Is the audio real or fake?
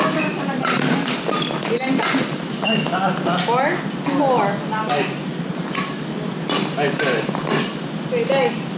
real